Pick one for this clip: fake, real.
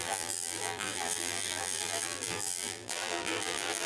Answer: fake